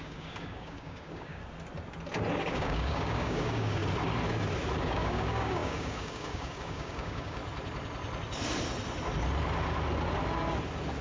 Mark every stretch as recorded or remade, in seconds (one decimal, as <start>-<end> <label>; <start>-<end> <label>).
0.0-1.4 remade; 1.4-2.4 recorded; 2.4-3.8 remade; 3.8-4.8 recorded; 4.8-7.4 remade; 7.4-11.0 recorded